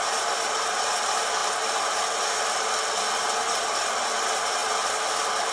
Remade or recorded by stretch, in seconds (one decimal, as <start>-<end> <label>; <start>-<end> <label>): 0.0-5.5 recorded